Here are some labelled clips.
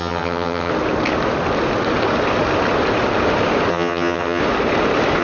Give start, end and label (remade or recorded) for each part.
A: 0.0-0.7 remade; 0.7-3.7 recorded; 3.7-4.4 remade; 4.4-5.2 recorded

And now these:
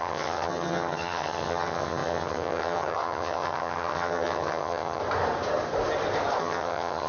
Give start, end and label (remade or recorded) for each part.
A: 0.0-5.0 remade; 5.0-6.4 recorded; 6.4-7.1 remade

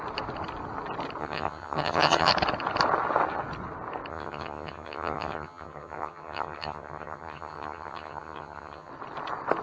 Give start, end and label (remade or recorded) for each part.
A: 0.0-1.2 recorded; 1.2-2.3 remade; 2.3-4.1 recorded; 4.1-8.9 remade; 8.9-9.6 recorded

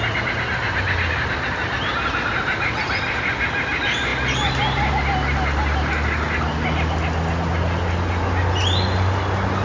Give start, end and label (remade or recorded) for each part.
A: 0.0-9.6 recorded

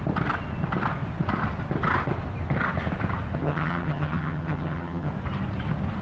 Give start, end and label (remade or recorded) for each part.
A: 0.0-3.4 recorded; 3.4-5.1 remade; 5.1-6.0 recorded

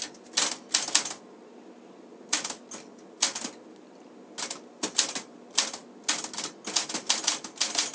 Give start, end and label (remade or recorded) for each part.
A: 0.0-7.9 recorded